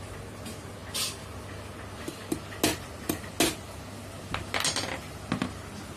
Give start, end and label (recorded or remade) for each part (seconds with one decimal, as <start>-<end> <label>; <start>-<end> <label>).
0.0-6.0 recorded